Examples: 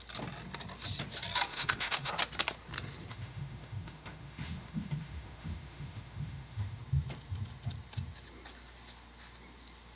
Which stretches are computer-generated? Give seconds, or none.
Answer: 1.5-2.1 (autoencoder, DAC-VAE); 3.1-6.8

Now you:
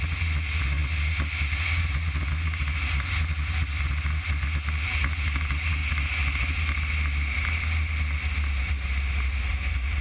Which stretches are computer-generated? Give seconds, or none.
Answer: none

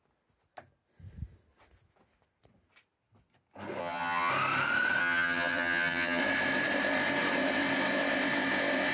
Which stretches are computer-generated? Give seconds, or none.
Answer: 3.8-4.3 (vocoder, HiFi-GAN); 5.0-6.2

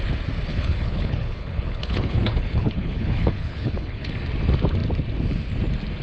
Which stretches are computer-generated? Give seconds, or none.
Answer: 0.5-4.1 (codec, HILCodec)

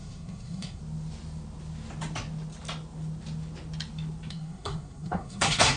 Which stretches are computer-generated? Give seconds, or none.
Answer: 0.0-0.8 (codec, SNAC); 4.3-5.8

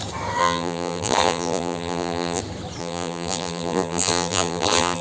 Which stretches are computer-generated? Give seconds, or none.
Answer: 0.4-2.4 (vocoder, BigVGAN v2); 2.8-5.0